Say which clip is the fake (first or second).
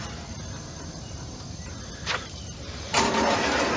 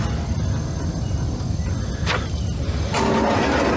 first